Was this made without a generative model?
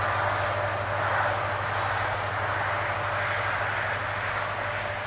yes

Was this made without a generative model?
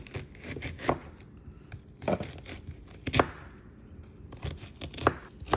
yes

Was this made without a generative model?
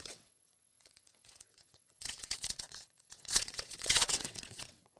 no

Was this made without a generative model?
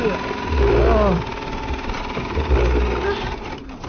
yes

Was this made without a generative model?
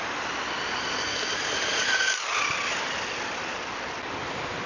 yes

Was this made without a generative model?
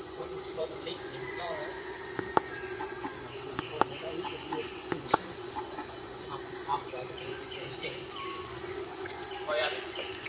no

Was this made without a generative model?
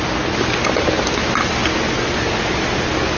yes